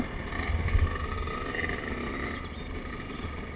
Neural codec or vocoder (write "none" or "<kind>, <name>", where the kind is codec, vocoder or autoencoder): none